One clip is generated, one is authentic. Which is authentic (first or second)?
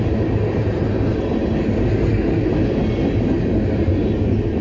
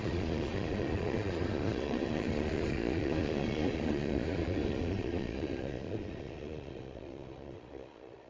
first